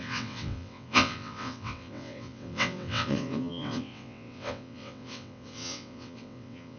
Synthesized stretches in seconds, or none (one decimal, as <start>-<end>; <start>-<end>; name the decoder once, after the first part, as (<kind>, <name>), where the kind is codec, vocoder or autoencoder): 0.0-6.8 (vocoder, WaveNeXt)